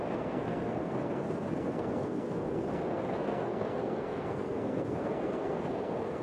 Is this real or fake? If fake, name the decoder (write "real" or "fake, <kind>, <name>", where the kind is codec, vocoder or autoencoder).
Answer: fake, codec, SNAC